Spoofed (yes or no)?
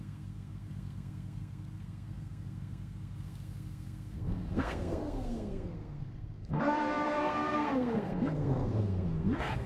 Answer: yes